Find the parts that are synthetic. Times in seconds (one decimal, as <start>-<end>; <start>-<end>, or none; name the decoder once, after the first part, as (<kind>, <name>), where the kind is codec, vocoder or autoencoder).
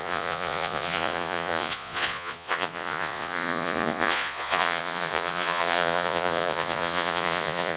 0.0-7.8 (vocoder, Vocos)